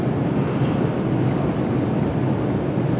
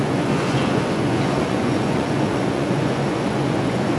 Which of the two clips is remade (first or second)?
second